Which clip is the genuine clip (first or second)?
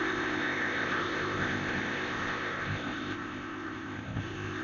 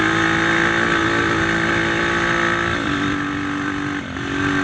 second